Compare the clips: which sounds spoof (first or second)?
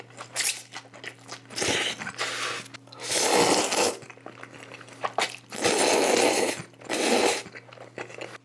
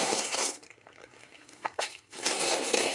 second